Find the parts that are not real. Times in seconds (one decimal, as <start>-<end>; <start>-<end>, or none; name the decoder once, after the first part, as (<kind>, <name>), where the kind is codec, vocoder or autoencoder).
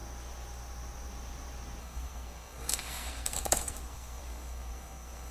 1.8-5.3 (codec, SNAC)